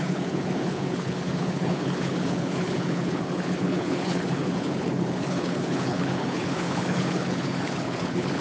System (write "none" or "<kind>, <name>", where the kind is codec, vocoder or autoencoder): codec, HILCodec